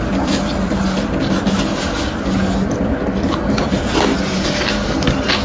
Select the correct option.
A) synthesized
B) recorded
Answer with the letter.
B